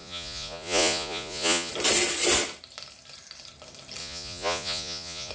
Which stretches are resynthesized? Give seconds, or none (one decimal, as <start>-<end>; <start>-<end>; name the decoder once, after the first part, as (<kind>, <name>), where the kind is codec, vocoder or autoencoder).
0.0-1.7 (vocoder, Vocos); 4.0-5.3